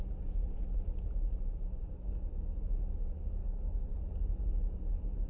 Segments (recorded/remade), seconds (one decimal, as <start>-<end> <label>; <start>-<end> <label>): 0.0-3.4 recorded; 3.4-4.0 remade; 4.0-5.3 recorded